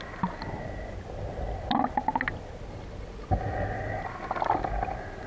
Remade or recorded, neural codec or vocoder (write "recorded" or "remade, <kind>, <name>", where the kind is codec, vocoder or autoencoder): recorded